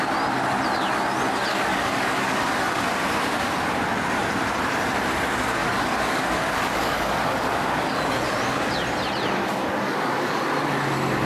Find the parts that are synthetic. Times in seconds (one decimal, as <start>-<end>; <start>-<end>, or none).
1.5-2.4; 5.6-8.0; 9.4-10.4